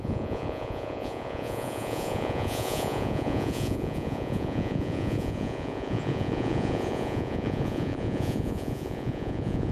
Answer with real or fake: fake